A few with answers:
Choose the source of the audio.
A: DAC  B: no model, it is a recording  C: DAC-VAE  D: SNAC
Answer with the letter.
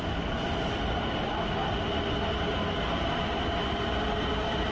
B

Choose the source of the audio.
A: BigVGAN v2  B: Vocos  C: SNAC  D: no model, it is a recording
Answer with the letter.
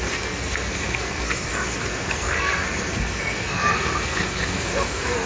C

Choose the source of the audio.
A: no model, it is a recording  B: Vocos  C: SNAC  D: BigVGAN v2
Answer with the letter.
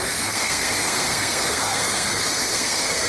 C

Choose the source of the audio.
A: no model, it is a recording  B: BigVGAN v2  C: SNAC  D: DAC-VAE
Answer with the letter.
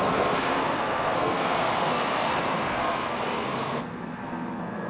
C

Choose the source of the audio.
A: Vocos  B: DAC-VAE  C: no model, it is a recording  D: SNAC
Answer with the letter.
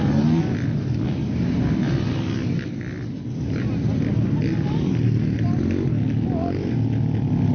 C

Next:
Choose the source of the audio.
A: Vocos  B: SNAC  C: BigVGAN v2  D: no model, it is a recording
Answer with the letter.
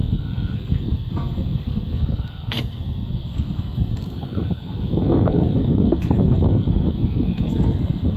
B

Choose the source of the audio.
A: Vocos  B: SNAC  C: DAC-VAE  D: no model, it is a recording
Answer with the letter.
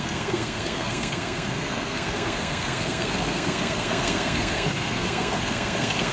B